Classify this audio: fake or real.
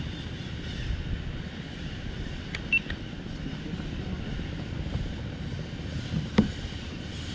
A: real